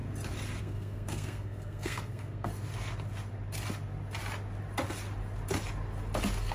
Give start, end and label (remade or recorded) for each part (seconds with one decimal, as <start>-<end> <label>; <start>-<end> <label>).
0.0-0.6 recorded; 0.6-2.5 remade; 2.5-6.5 recorded